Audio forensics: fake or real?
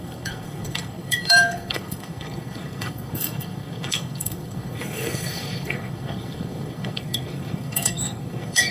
fake